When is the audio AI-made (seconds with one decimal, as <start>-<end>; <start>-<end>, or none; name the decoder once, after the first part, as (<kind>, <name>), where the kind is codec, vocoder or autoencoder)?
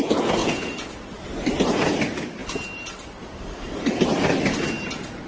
0.4-0.9 (vocoder, Vocos)